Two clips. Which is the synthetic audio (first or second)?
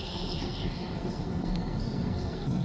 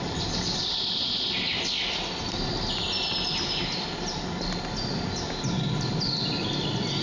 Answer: first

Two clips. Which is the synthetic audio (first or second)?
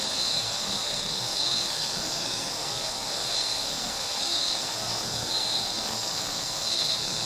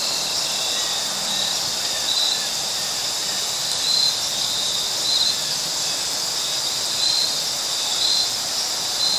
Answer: first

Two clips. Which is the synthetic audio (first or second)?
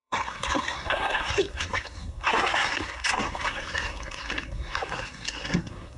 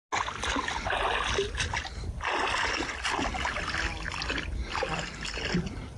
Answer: first